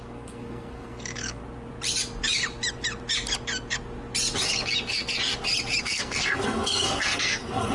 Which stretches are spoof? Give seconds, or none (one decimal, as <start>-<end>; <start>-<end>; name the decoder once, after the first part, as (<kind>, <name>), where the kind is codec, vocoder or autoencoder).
0.0-1.4 (codec, SNAC); 5.8-7.7